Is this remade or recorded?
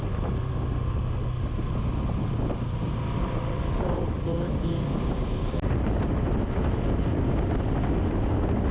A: recorded